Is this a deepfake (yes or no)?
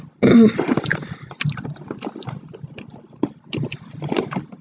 no